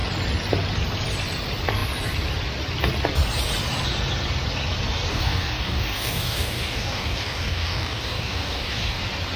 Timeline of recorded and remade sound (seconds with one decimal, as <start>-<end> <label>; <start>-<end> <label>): 0.0-5.1 recorded; 5.1-9.0 remade; 9.0-9.4 recorded